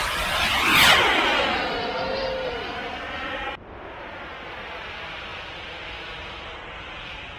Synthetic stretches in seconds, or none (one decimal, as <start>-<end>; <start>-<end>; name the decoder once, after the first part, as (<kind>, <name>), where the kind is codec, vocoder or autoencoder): 0.0-0.5 (vocoder, BigVGAN v2); 1.6-4.1